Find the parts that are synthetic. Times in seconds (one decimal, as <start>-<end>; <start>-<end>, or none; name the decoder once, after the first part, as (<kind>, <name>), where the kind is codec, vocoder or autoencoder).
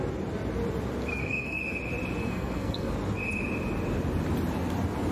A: 1.1-1.6 (codec, SNAC); 2.2-2.9